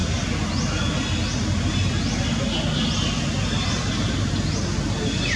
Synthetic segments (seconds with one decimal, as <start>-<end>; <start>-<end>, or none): none

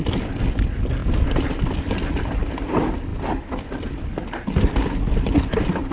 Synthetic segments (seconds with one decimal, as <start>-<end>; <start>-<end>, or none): none

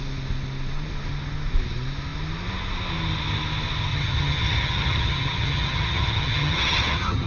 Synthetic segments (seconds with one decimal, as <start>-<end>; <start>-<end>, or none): 3.9-7.3

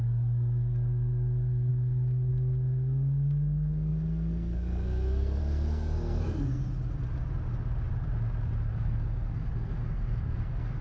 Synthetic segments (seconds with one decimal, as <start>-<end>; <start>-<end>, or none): 0.0-6.6; 8.7-10.8

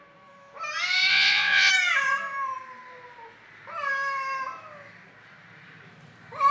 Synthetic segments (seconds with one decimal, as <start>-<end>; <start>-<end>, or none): 1.1-1.7